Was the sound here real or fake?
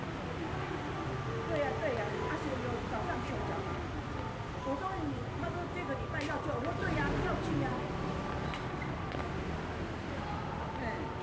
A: real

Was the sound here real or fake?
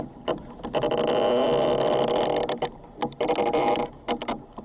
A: real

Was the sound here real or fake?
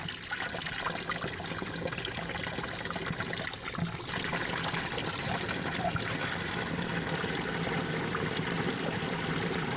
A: real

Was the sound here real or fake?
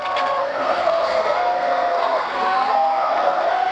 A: fake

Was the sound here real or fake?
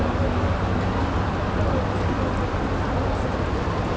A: real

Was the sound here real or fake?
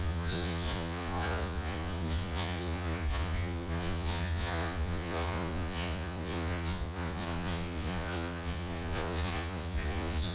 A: fake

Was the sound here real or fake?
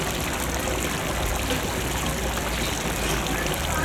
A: real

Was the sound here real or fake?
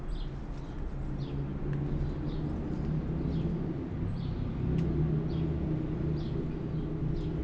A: real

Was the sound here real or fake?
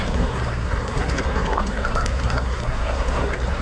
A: fake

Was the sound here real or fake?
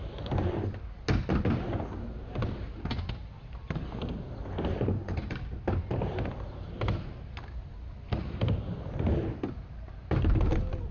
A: real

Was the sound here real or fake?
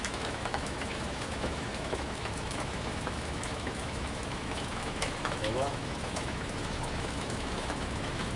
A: fake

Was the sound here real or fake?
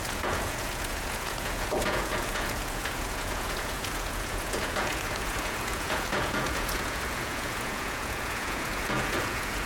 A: fake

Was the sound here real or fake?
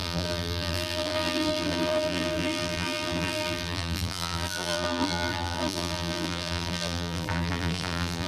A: fake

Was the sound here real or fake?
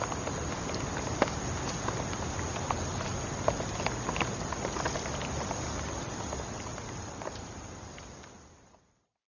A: real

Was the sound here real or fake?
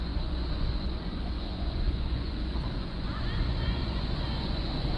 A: fake